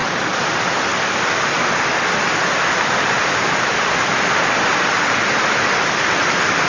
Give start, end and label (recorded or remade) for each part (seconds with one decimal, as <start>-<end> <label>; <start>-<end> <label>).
0.0-6.7 recorded